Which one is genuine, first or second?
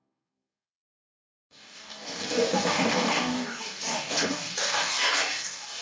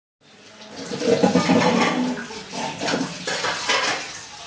second